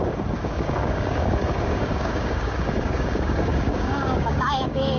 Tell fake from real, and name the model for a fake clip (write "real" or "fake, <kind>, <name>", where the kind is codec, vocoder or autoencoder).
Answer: fake, codec, DAC